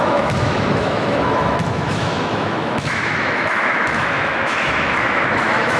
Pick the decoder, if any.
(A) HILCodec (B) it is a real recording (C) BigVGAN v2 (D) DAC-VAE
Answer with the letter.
D